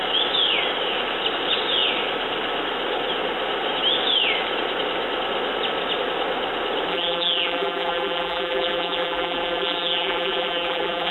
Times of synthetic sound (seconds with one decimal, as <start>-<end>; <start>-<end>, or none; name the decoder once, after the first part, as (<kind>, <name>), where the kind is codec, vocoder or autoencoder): 6.9-11.1 (vocoder, BigVGAN v2)

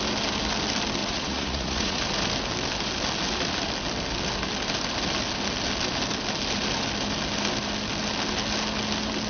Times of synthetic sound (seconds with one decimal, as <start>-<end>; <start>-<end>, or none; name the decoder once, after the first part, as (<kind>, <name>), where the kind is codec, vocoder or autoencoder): 1.0-2.0 (vocoder, Vocos)

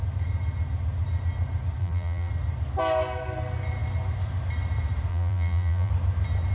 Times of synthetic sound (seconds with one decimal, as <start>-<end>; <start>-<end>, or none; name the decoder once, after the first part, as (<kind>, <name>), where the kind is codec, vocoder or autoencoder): 1.8-2.3 (vocoder, BigVGAN v2); 5.1-5.9

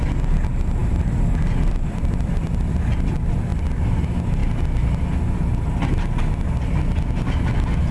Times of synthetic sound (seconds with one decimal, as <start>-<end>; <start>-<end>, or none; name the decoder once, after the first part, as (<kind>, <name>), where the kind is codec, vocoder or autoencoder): 0.8-2.6 (vocoder, BigVGAN v2); 3.5-4.0

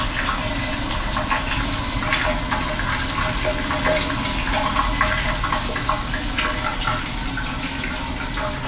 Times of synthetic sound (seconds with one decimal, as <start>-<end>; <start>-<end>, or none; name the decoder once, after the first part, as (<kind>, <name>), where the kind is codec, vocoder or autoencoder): none

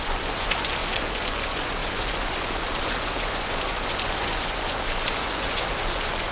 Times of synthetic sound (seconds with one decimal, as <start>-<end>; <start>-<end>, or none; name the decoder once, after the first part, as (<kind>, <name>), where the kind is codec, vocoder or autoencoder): 0.0-6.3 (vocoder, Vocos)